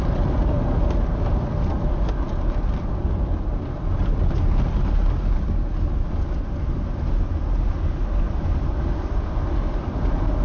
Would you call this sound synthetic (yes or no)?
no